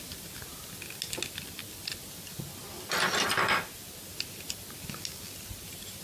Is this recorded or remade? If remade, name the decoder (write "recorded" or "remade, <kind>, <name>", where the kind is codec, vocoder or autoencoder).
recorded